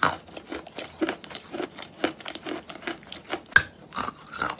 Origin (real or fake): real